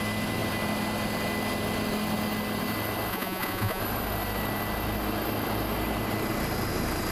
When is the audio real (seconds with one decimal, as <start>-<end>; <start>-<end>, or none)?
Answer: 0.0-3.1; 3.8-7.1